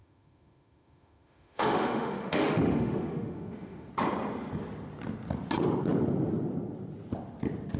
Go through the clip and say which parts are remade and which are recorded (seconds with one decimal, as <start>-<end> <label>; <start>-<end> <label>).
0.0-3.9 remade; 3.9-7.8 recorded